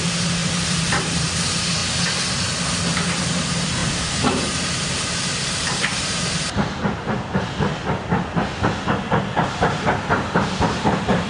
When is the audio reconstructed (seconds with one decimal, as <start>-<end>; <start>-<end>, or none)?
0.0-1.8; 2.9-7.7; 9.5-11.3